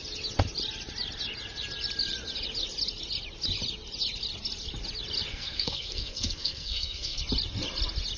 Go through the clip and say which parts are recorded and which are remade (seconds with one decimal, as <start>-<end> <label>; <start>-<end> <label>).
0.0-5.3 recorded; 5.3-7.2 remade; 7.2-8.2 recorded